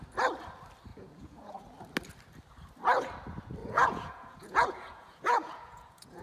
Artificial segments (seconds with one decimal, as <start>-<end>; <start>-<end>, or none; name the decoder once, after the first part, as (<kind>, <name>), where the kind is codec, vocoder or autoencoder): 0.9-1.6 (vocoder, Vocos); 3.6-6.2